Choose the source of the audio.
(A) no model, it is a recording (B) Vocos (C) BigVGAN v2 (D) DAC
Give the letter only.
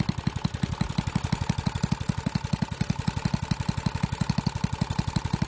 A